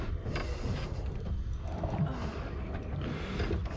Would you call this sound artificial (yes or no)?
no